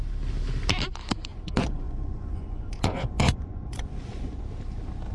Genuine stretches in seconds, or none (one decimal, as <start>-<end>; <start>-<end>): 0.0-1.3; 4.4-5.1